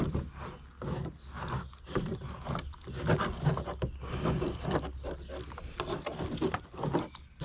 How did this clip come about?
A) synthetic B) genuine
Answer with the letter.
B